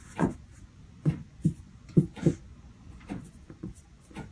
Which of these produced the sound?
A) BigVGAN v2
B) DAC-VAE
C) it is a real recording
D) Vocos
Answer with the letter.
D